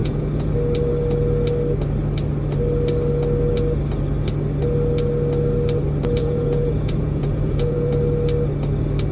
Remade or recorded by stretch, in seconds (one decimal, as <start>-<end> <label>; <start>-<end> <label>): 0.0-0.5 remade; 0.5-6.2 recorded; 6.2-7.9 remade; 7.9-9.1 recorded